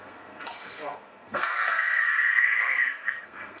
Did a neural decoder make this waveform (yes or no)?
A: yes